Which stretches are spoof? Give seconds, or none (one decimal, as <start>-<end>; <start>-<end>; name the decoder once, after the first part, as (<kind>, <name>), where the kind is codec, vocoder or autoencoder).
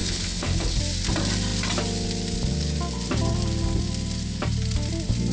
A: 0.0-0.8 (codec, HILCodec)